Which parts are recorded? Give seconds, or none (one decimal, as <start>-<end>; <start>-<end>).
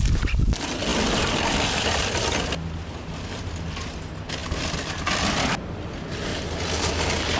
0.0-7.4